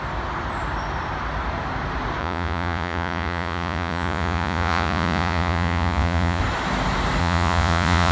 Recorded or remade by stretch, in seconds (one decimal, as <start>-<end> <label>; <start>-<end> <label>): 0.0-2.2 recorded; 2.2-6.4 remade; 6.4-7.2 recorded; 7.2-8.1 remade